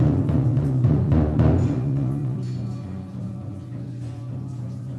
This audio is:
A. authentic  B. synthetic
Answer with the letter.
B